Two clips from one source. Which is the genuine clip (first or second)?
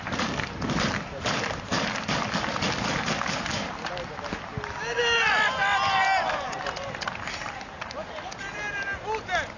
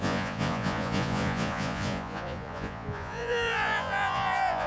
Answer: first